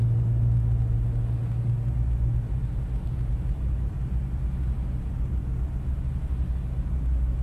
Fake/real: real